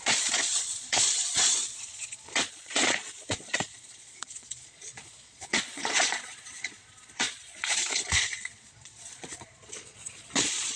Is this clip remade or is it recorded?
remade